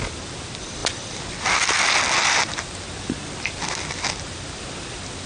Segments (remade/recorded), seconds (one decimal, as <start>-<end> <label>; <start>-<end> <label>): 0.0-5.3 recorded